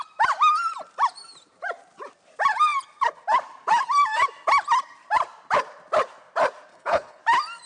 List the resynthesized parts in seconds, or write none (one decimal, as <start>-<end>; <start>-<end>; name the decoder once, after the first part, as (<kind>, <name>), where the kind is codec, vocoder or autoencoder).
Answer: 6.7-7.2 (codec, HILCodec)

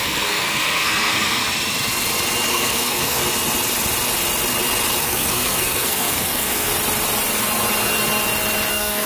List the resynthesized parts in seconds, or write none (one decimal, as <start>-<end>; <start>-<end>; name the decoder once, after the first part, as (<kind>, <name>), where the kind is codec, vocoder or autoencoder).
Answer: 0.0-1.4 (codec, SNAC); 2.5-3.2; 5.0-6.7; 8.7-9.1

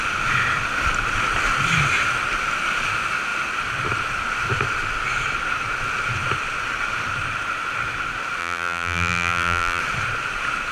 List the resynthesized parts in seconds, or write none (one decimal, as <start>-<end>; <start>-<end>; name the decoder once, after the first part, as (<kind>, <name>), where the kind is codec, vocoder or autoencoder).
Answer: 8.4-9.8 (vocoder, BigVGAN v2)

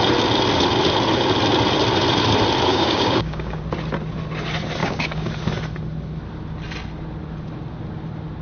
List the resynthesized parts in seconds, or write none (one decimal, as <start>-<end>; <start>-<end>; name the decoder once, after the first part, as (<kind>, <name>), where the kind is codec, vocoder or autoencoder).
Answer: 2.7-3.6 (codec, DAC); 4.8-5.3

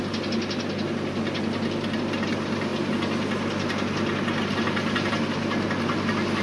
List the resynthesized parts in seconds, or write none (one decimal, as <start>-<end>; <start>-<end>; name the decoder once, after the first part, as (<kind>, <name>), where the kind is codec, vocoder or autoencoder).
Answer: none

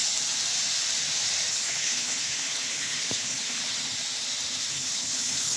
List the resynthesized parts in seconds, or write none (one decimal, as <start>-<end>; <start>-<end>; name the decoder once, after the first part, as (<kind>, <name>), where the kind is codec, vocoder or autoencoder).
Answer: 1.5-3.6 (codec, HILCodec); 4.7-5.6

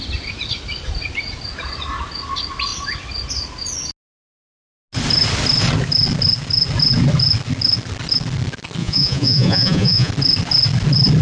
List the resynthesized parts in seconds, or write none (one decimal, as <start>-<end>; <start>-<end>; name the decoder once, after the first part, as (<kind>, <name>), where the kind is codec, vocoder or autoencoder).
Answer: 8.8-10.1 (vocoder, Vocos)